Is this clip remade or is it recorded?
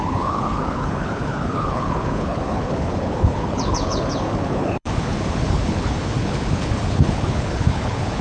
remade